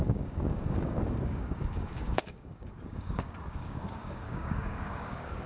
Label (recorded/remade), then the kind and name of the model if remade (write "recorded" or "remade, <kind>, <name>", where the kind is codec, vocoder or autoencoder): remade, codec, DAC